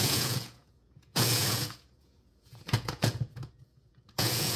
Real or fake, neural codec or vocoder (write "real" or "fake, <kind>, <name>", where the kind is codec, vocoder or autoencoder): fake, vocoder, Vocos